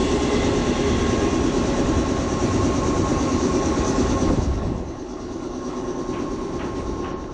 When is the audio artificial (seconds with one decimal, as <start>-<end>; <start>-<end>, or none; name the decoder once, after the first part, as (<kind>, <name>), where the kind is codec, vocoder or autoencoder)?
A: 3.1-6.0 (codec, DAC)